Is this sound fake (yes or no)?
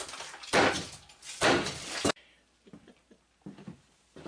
no